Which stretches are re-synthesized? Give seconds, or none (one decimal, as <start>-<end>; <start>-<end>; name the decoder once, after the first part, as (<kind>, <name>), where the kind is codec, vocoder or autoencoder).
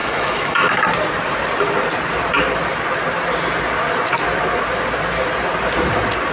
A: 0.0-0.8 (autoencoder, DAC-VAE)